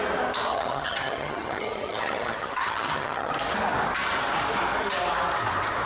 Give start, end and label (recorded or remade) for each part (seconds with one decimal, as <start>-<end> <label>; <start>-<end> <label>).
0.0-0.5 recorded; 0.5-3.3 remade; 3.3-5.9 recorded